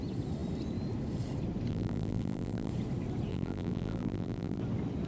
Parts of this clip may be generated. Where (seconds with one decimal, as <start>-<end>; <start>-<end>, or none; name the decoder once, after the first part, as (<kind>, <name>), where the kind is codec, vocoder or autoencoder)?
1.7-2.7 (vocoder, BigVGAN v2); 3.3-4.6